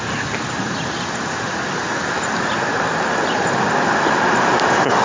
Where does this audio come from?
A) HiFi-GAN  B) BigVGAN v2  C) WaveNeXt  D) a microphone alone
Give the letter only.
D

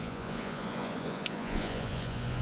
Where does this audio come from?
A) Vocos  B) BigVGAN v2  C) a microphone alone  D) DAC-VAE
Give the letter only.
A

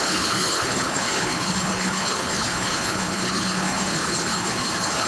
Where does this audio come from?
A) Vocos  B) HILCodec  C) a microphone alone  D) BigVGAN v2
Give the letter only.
B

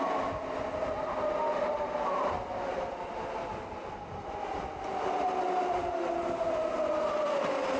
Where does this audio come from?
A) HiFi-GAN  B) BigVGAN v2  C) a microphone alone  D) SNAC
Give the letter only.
C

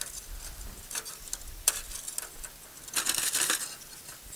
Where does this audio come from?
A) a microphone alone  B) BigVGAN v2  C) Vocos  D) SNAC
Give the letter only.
A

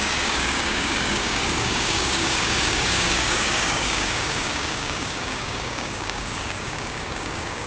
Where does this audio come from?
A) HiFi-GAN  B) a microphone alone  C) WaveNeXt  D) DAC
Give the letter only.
D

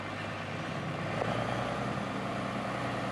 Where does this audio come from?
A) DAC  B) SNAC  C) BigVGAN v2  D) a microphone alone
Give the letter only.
D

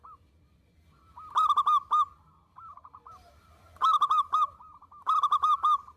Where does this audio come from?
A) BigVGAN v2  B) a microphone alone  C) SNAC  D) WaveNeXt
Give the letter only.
B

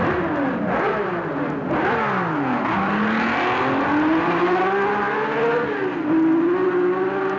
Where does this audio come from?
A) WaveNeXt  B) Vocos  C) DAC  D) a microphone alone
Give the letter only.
D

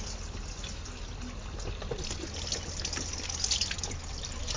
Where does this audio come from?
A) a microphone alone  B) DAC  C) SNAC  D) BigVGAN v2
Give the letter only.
A